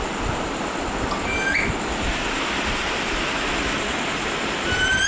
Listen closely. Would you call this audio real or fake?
real